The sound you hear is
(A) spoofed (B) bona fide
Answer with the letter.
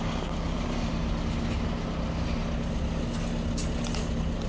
B